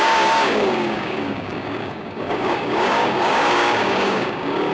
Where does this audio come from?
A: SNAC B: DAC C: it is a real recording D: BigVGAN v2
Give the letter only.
B